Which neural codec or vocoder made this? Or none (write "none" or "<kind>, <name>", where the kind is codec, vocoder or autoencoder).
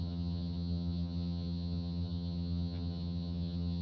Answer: vocoder, HiFi-GAN